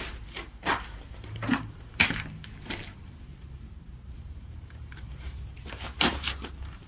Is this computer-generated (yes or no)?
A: yes